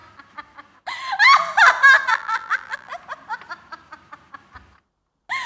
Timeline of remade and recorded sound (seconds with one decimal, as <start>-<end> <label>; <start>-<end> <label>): 0.0-2.1 recorded; 2.1-2.9 remade; 2.9-5.5 recorded